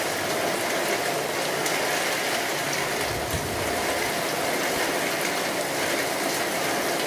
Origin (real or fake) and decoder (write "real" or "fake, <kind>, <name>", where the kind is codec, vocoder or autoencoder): real